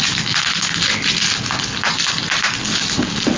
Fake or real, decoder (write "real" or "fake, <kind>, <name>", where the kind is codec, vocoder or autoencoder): real